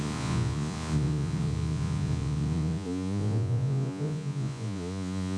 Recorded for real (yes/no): no